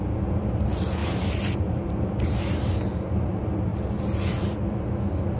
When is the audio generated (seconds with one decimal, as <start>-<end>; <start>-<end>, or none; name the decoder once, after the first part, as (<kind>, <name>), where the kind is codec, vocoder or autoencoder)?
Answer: 1.0-2.8 (vocoder, BigVGAN v2)